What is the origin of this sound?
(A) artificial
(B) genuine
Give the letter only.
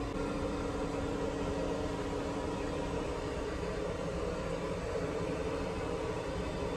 B